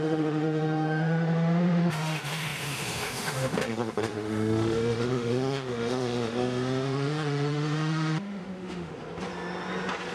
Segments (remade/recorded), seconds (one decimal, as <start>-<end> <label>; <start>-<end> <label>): 0.0-8.9 remade; 8.9-10.1 recorded